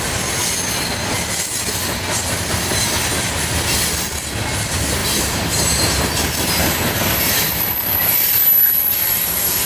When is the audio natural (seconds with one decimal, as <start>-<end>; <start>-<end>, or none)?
0.0-5.0; 8.4-9.7